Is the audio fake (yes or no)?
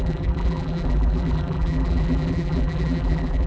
yes